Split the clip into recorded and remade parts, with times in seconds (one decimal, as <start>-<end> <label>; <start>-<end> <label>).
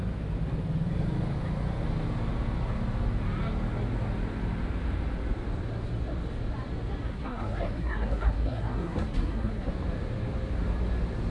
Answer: 0.0-7.1 recorded; 7.1-9.7 remade; 9.7-11.3 recorded